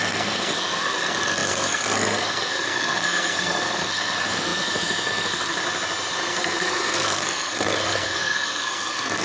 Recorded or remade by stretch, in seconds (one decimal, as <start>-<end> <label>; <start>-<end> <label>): 0.0-5.6 remade; 5.6-6.3 recorded; 6.3-9.2 remade